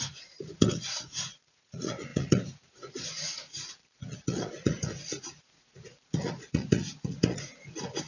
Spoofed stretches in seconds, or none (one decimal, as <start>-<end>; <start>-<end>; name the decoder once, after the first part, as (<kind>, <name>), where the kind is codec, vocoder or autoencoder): 0.0-8.1 (vocoder, Vocos)